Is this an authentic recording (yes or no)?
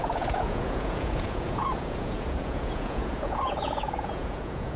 no